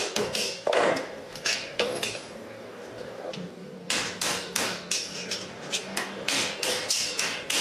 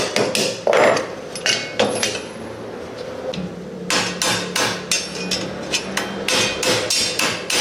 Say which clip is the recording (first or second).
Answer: second